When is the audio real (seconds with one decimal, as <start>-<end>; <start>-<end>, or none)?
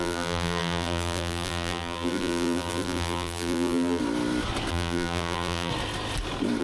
4.0-4.7; 5.7-6.6